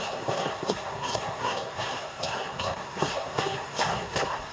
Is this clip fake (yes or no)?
yes